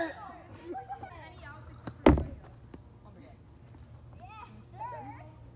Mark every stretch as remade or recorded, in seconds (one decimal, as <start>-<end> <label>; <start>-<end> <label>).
0.0-5.6 recorded